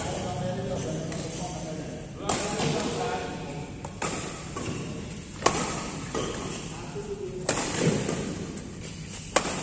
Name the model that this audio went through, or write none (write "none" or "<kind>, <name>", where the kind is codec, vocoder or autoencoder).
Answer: none